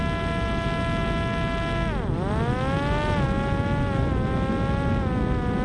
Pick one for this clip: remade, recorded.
recorded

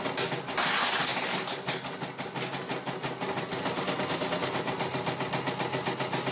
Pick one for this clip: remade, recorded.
recorded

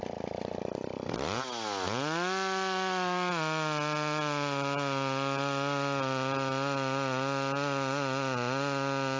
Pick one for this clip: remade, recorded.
recorded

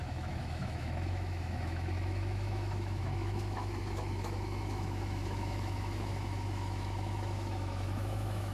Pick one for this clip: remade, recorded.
remade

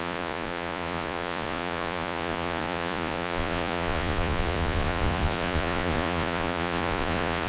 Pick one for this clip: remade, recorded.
remade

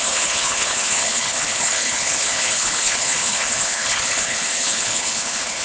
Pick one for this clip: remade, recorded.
remade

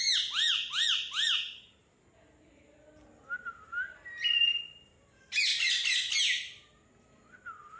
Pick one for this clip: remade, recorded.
recorded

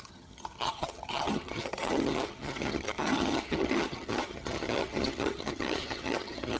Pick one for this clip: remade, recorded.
remade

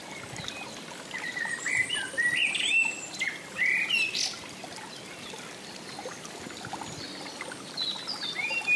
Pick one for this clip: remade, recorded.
recorded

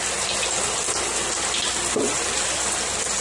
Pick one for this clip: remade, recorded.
recorded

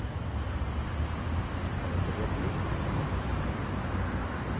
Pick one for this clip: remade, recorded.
recorded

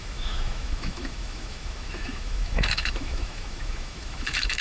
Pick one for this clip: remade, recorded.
remade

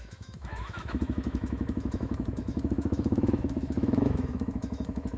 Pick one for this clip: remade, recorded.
remade